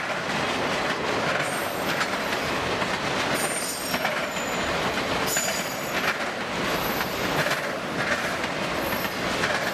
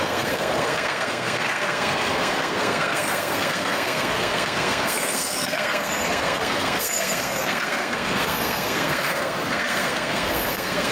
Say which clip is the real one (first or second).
first